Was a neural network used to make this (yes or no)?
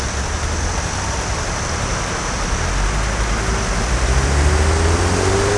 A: no